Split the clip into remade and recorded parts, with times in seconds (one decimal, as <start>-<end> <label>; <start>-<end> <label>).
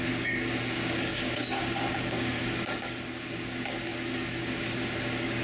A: 0.0-3.9 remade; 3.9-4.4 recorded; 4.4-5.4 remade